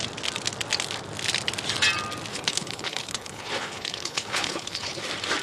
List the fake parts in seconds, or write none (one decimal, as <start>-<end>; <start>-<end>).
2.3-5.0